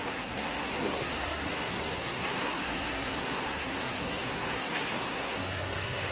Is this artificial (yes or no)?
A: yes